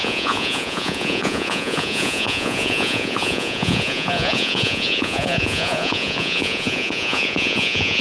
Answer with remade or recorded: remade